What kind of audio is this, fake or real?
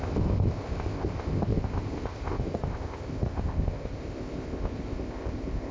fake